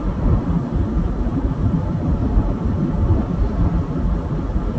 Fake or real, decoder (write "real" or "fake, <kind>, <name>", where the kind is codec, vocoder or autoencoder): fake, vocoder, BigVGAN v2